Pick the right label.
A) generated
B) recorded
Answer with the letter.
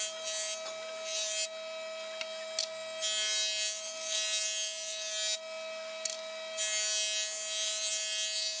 B